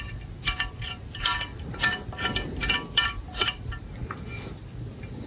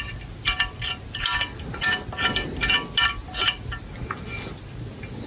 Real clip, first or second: second